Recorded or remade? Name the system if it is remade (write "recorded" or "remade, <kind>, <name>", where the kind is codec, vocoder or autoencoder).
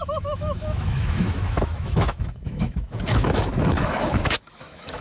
remade, autoencoder, DAC-VAE